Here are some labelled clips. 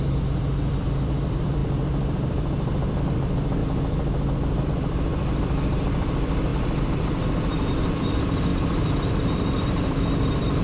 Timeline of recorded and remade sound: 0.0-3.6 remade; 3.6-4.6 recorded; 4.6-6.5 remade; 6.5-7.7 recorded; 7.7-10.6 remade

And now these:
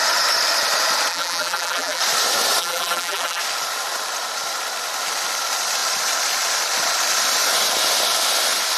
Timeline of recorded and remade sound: 0.0-1.1 recorded; 1.1-2.0 remade; 2.0-2.6 recorded; 2.6-3.4 remade; 3.4-8.8 recorded

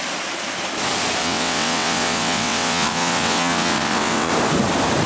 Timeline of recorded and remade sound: 0.0-1.2 recorded; 1.2-4.3 remade; 4.3-5.1 recorded

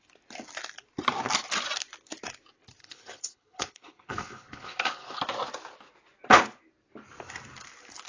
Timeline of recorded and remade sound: 0.0-2.8 recorded; 2.8-5.2 remade; 5.2-8.1 recorded

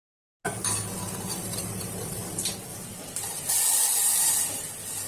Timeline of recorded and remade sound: 0.0-1.4 recorded; 1.4-2.2 remade; 2.2-2.7 recorded; 2.7-3.6 remade; 3.6-5.1 recorded

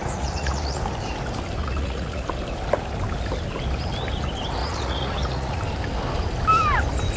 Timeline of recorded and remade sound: 0.0-0.8 remade; 0.8-1.6 recorded; 1.6-2.3 remade; 2.3-4.6 recorded; 4.6-5.6 remade; 5.6-7.2 recorded

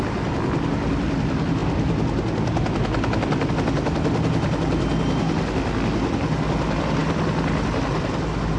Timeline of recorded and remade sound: 0.0-8.6 recorded

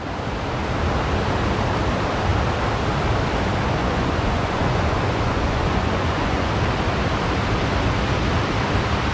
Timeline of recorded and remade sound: 0.0-3.8 recorded; 3.8-6.5 remade; 6.5-9.1 recorded